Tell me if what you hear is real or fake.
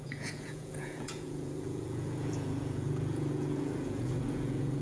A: fake